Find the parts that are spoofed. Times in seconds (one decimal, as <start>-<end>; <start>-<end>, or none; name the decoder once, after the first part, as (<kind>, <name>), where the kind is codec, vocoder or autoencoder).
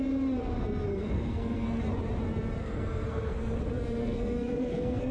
0.9-1.8 (codec, SNAC); 2.6-3.4; 4.0-5.1